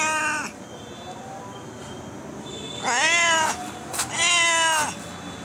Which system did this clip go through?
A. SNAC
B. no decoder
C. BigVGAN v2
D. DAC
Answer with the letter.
B